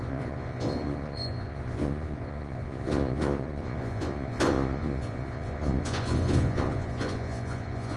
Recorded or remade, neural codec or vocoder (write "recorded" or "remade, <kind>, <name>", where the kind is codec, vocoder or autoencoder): remade, vocoder, Vocos